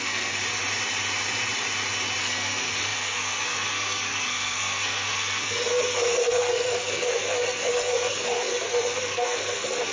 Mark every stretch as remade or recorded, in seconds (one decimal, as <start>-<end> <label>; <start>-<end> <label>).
0.0-0.4 remade; 0.4-2.2 recorded; 2.2-9.9 remade